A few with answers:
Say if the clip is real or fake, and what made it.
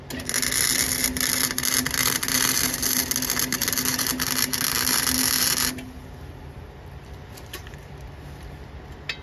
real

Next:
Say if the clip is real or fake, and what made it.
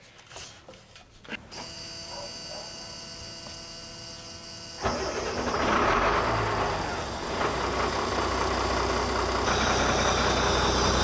real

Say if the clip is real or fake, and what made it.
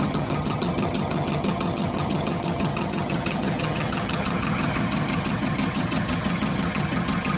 fake, vocoder, HiFi-GAN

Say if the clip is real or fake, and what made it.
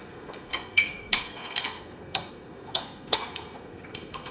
fake, codec, SNAC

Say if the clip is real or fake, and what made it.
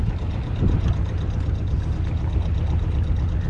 real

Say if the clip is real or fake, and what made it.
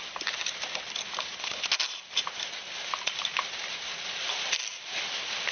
real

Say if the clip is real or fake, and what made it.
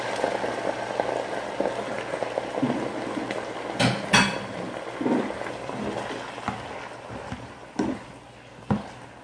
real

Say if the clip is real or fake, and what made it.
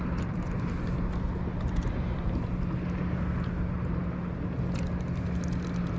real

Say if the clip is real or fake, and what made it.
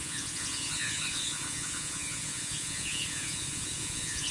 fake, vocoder, Vocos